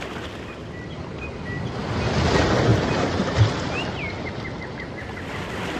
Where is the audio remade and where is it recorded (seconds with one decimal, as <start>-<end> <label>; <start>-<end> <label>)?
0.0-2.7 recorded; 2.7-3.4 remade; 3.4-5.8 recorded